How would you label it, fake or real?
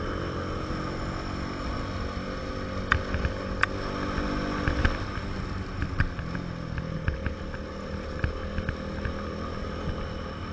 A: real